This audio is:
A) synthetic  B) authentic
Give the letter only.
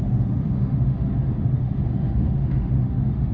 A